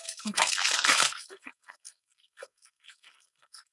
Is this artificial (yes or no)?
yes